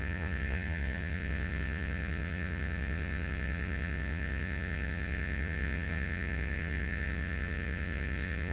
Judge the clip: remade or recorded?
remade